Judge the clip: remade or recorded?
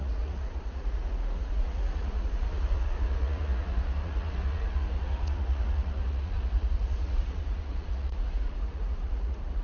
remade